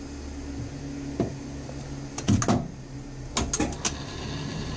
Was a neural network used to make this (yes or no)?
no